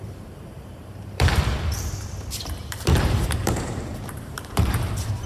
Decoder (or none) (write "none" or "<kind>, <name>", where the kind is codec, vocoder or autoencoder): vocoder, BigVGAN v2